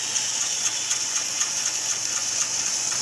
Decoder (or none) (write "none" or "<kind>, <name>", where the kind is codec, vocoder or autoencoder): vocoder, Vocos